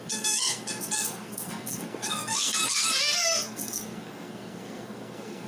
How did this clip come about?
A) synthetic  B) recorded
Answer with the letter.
A